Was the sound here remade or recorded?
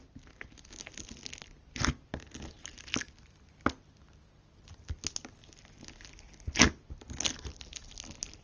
recorded